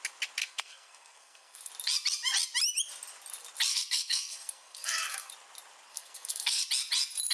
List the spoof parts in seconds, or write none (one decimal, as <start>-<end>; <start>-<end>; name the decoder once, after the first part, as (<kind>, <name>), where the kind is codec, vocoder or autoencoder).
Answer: 0.4-1.7 (codec, SNAC); 3.7-5.3; 5.9-6.6